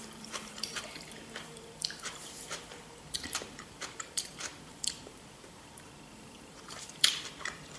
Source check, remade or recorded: remade